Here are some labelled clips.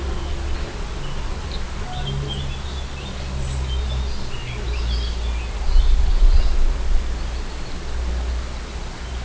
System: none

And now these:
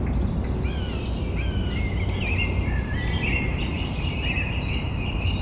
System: none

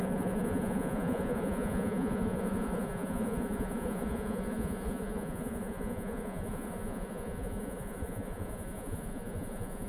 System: vocoder, Vocos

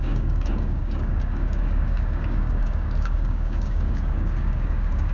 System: codec, DAC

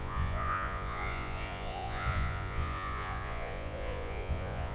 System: vocoder, Vocos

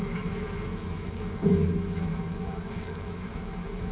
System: autoencoder, DAC-VAE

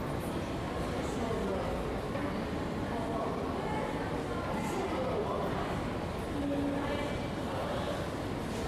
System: none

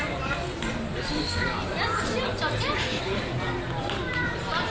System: none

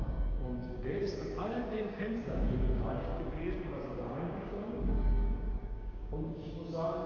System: codec, DAC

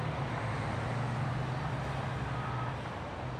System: none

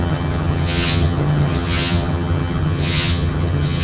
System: vocoder, HiFi-GAN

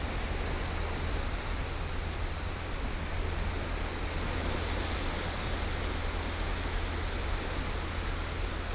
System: none